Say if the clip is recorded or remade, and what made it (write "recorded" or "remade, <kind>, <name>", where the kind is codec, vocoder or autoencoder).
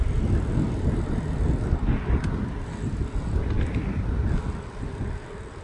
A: recorded